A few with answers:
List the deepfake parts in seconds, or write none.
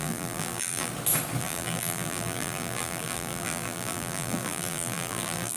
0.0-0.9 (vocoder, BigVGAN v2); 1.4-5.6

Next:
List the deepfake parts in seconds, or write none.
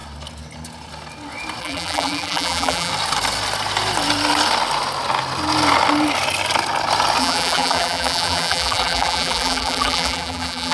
1.6-2.9 (vocoder, BigVGAN v2); 7.2-10.7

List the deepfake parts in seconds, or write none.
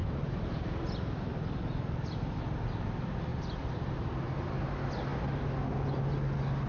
0.0-0.8 (vocoder, BigVGAN v2); 3.3-4.5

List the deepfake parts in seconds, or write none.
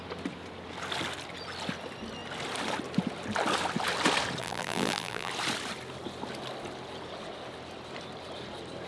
4.4-5.3 (vocoder, BigVGAN v2)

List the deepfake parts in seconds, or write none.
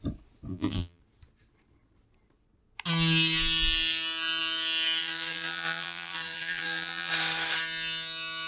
0.5-1.0 (vocoder, BigVGAN v2); 5.0-7.1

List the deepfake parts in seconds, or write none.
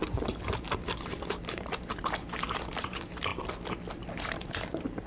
0.0-3.3 (vocoder, BigVGAN v2); 3.9-5.1